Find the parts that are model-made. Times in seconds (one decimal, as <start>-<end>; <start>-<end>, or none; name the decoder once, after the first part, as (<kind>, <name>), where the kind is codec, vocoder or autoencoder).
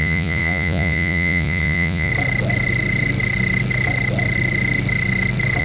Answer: 0.0-2.1 (vocoder, Vocos)